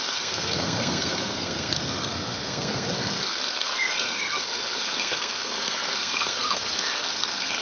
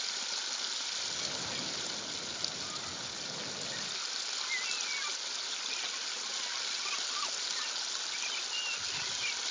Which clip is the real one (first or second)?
second